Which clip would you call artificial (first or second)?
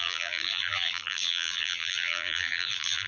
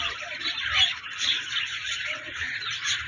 first